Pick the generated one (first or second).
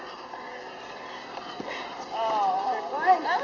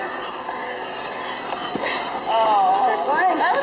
first